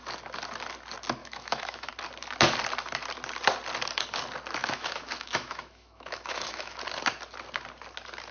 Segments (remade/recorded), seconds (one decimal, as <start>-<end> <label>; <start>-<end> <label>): 0.0-1.2 recorded; 1.2-1.9 remade; 1.9-4.6 recorded; 4.6-6.8 remade; 6.8-8.3 recorded